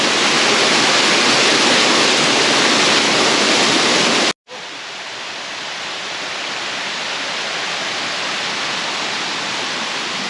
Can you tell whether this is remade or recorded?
recorded